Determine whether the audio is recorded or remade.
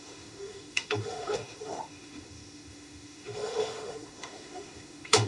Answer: remade